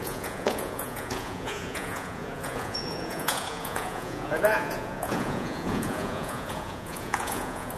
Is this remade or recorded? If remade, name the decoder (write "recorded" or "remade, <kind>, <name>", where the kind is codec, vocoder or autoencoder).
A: remade, vocoder, Vocos